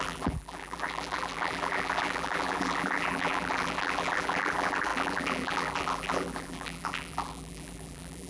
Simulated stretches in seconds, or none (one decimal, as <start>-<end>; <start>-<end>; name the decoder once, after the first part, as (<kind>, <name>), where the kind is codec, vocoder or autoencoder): 0.0-8.3 (vocoder, BigVGAN v2)